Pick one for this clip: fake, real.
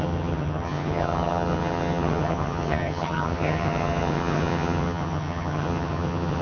fake